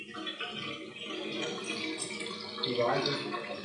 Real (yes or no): yes